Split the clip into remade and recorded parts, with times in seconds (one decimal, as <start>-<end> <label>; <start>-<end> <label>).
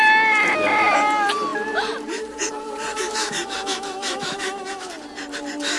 0.0-2.9 recorded; 2.9-4.9 remade; 4.9-5.8 recorded